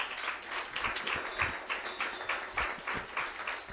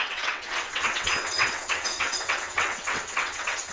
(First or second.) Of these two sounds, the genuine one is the first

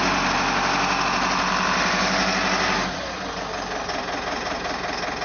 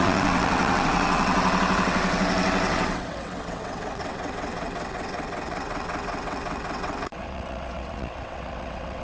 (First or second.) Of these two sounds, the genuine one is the first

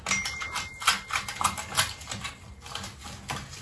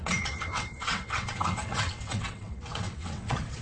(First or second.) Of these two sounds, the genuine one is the first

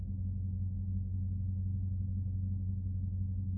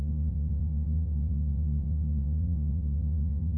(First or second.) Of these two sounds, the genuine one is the first